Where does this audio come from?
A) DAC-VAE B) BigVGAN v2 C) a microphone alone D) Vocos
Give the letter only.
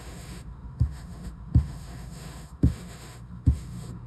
A